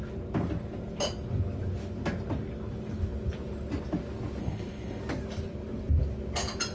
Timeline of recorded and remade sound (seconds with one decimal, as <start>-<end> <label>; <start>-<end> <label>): 0.0-4.4 recorded; 4.4-5.0 remade; 5.0-6.7 recorded